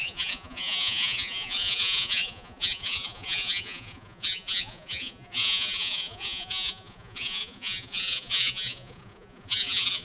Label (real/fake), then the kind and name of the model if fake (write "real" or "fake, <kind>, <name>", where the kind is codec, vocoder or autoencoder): fake, vocoder, Vocos